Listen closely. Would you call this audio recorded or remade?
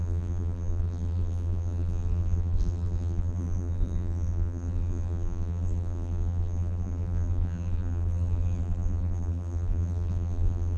remade